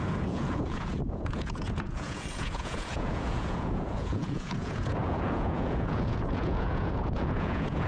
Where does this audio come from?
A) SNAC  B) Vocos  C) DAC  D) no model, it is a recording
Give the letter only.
B